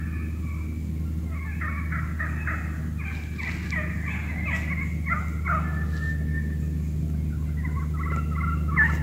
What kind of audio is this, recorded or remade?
recorded